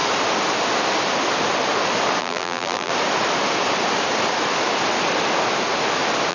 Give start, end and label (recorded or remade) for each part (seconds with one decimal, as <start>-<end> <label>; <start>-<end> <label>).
0.0-2.2 recorded; 2.2-2.9 remade; 2.9-6.3 recorded